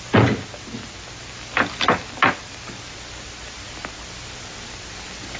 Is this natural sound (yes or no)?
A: yes